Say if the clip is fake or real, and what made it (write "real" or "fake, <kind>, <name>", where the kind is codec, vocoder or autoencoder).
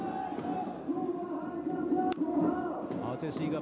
real